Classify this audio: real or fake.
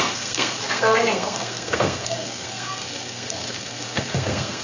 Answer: fake